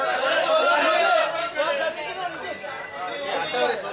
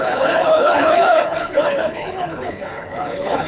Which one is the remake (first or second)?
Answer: second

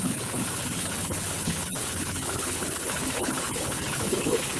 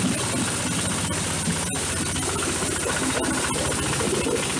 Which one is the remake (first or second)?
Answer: first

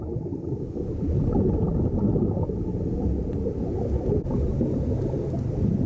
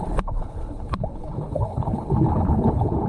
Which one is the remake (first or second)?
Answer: second